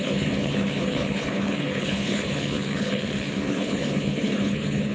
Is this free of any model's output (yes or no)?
no